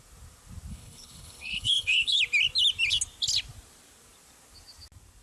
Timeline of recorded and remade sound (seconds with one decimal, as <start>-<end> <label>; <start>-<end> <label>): 0.0-0.7 recorded; 0.7-2.2 remade; 2.2-5.2 recorded